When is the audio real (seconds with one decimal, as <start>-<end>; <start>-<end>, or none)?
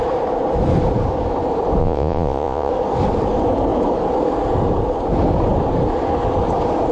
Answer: 0.0-1.8; 2.7-6.9